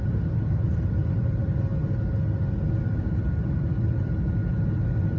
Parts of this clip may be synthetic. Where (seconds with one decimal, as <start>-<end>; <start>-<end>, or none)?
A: 0.0-1.7; 3.6-5.2